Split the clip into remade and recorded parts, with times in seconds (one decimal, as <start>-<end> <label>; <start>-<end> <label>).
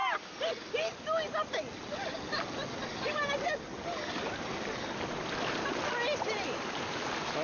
0.0-0.5 remade; 0.5-7.4 recorded